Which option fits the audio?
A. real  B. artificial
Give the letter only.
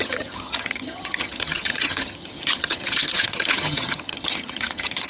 B